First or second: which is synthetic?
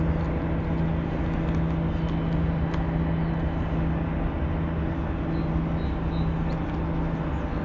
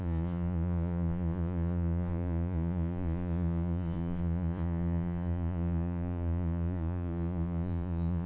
second